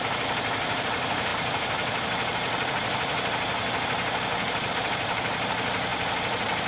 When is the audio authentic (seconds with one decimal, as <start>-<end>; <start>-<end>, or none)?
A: none

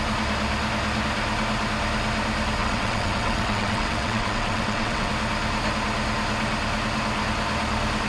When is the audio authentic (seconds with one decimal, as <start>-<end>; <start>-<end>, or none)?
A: 0.0-2.6; 5.1-8.1

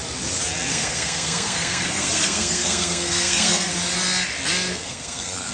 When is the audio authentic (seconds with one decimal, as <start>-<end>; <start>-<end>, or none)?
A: 0.0-0.7; 3.7-4.7

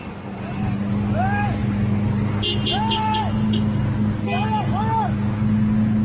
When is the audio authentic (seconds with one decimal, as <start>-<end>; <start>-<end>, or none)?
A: 0.0-6.0

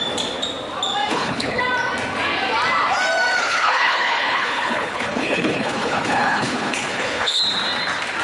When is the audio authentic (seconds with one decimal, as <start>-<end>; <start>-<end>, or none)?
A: 0.0-1.1; 1.6-3.4; 7.4-8.2

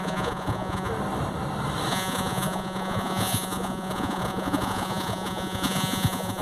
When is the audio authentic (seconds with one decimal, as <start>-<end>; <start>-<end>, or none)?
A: 0.9-1.9

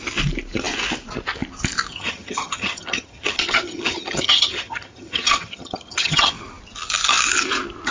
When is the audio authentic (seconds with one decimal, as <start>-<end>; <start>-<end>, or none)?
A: 0.0-1.9; 6.3-7.9